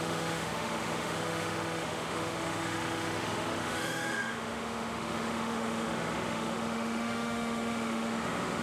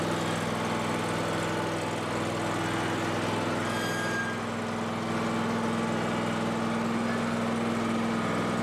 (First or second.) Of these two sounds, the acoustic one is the second